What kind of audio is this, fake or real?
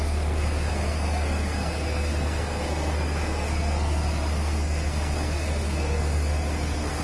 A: fake